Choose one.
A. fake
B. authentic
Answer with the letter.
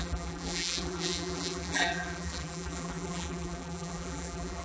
A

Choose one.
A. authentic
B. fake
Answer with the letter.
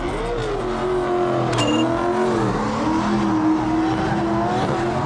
A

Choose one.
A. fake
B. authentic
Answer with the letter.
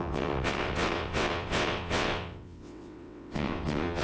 A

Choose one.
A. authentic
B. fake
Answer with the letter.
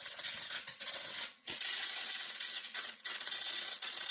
B